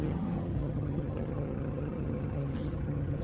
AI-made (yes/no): yes